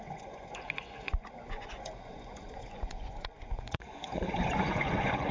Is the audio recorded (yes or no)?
no